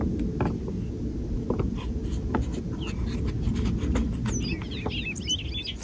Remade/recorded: recorded